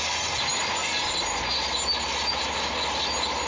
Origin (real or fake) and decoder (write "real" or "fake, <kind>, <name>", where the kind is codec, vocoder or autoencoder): real